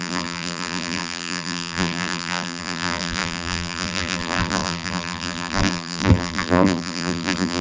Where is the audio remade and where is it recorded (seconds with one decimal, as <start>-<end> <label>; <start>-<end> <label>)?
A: 0.0-7.6 remade